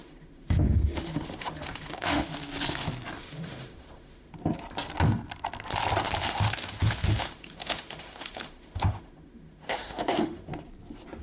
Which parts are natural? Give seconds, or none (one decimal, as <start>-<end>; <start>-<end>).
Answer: 2.3-3.2; 4.3-6.3; 10.5-11.2